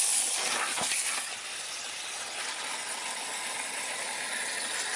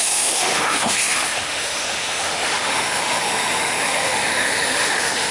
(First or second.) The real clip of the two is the first